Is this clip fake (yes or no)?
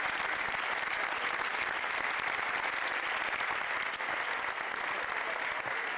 no